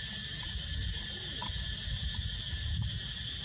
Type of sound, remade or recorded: recorded